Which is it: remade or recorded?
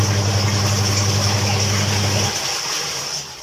recorded